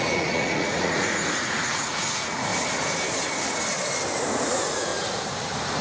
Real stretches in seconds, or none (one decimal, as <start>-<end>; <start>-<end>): 2.5-4.4; 4.9-5.8